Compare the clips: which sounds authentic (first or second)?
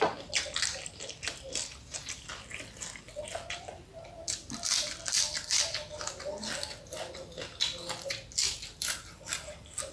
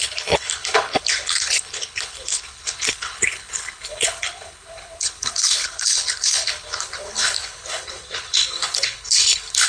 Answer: first